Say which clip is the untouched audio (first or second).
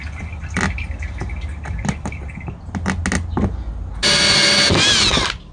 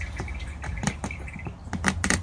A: first